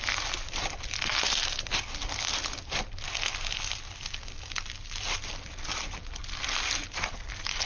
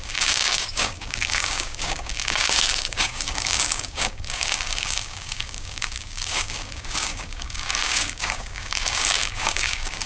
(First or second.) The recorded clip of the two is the first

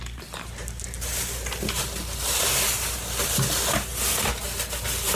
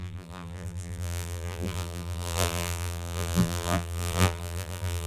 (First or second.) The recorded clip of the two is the first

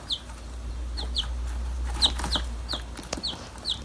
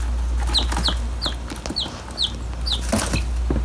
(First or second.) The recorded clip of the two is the second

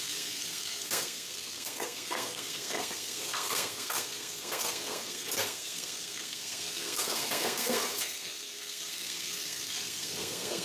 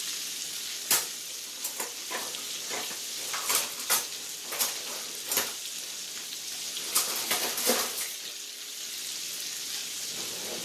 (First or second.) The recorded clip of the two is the second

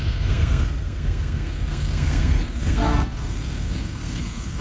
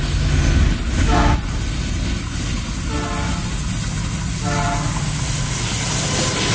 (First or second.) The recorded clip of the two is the second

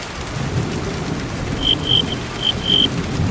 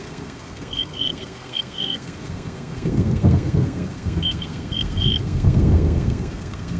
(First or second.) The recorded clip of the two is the first